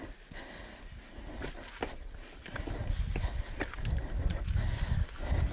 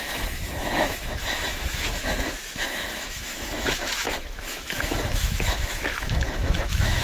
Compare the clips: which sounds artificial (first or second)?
second